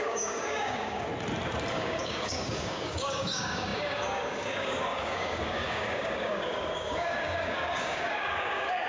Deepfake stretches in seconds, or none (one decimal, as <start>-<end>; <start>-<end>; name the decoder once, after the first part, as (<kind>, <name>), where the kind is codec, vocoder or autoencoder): 0.0-1.1 (codec, DAC); 1.7-8.9